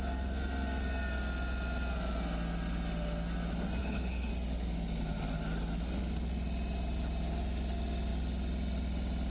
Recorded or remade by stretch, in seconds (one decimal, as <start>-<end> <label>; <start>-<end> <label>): 0.0-3.8 recorded; 3.8-4.3 remade; 4.3-9.3 recorded